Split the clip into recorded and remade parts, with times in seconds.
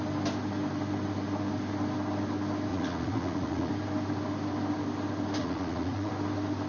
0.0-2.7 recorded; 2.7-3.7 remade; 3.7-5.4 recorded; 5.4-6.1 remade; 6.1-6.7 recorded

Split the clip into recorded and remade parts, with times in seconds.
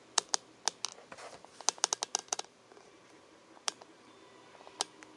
0.0-2.2 recorded; 2.2-4.2 remade; 4.2-5.2 recorded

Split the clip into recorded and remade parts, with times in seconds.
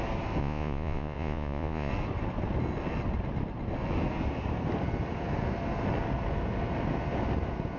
0.0-0.4 recorded; 0.4-1.9 remade; 1.9-7.8 recorded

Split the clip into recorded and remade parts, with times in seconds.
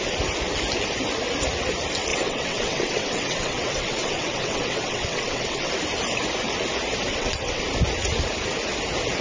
0.0-2.1 recorded; 2.1-5.7 remade; 5.7-7.1 recorded; 7.1-7.6 remade; 7.6-9.2 recorded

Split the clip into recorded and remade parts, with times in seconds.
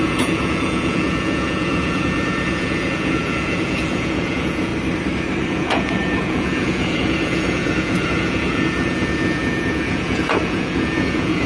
0.0-4.7 remade; 4.7-5.5 recorded; 5.5-11.5 remade